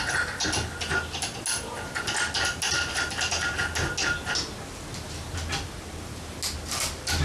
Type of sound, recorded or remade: recorded